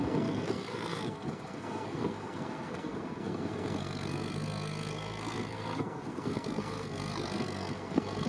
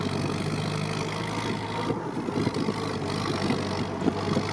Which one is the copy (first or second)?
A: first